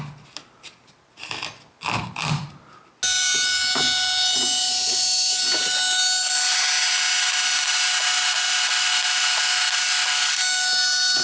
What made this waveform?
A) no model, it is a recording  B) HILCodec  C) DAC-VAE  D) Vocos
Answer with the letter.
A